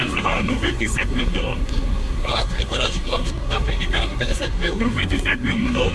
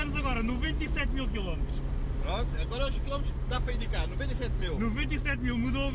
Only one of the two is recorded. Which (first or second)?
second